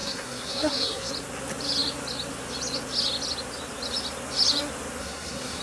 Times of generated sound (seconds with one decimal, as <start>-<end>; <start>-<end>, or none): 0.0-1.1; 5.0-5.6